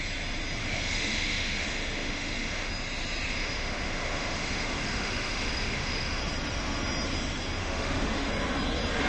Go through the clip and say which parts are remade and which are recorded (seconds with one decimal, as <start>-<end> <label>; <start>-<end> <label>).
0.0-0.6 recorded; 0.6-2.7 remade; 2.7-3.3 recorded; 3.3-6.2 remade; 6.2-7.6 recorded; 7.6-8.3 remade; 8.3-9.1 recorded